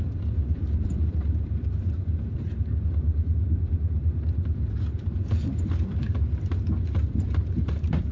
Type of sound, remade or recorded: remade